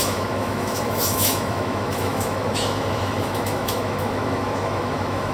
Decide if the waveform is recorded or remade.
remade